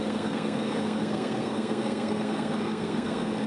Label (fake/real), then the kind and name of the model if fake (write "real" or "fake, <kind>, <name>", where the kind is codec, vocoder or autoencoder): fake, codec, SNAC